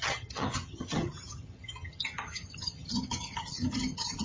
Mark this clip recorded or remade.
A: remade